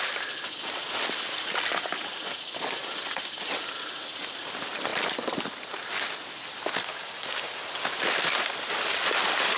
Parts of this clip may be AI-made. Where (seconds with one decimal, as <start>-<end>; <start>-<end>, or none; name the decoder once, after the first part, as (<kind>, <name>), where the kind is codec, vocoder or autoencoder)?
none